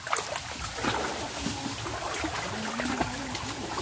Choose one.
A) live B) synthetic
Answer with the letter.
A